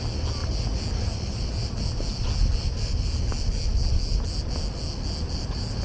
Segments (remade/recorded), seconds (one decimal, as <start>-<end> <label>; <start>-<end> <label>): 0.0-5.8 recorded